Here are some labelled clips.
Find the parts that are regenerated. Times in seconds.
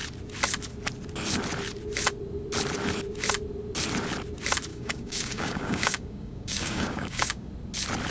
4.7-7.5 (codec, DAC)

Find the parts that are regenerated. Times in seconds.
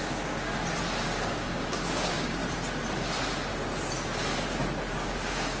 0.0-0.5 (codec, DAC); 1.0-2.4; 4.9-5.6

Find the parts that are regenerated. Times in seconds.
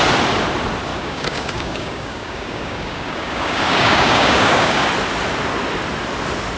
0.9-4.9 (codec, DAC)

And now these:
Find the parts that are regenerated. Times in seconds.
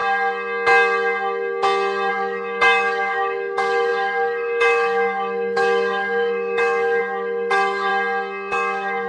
2.1-7.9 (codec, DAC); 8.5-9.1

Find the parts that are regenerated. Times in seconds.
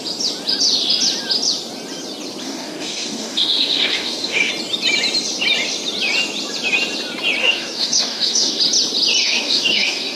2.4-4.5 (codec, DAC); 7.4-8.6; 9.2-10.2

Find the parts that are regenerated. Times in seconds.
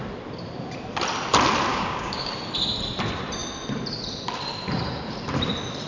1.7-2.3 (codec, DAC)